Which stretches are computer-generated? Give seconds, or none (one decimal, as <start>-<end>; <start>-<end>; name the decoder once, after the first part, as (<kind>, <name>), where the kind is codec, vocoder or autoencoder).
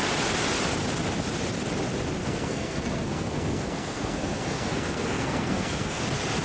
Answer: 2.2-6.0 (codec, SNAC)